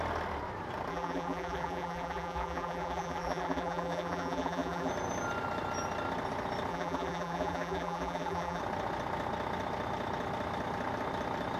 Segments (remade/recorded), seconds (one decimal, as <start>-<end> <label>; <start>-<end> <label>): 0.0-0.9 recorded; 0.9-4.9 remade; 4.9-6.7 recorded; 6.7-8.6 remade; 8.6-11.6 recorded